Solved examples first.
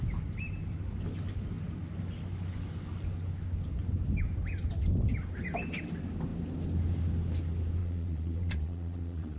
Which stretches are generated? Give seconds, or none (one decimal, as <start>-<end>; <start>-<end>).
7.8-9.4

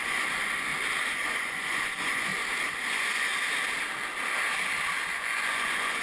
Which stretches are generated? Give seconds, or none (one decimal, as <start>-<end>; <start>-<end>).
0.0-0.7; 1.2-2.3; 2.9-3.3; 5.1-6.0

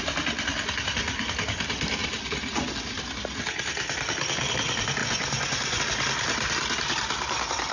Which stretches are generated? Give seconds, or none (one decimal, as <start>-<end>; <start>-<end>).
5.0-5.8

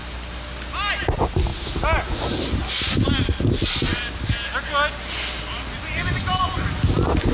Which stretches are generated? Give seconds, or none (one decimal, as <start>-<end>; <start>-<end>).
none